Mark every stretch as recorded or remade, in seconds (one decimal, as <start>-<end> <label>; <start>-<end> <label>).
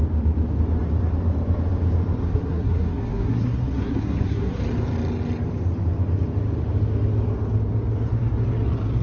0.0-2.2 recorded; 2.2-4.6 remade; 4.6-9.0 recorded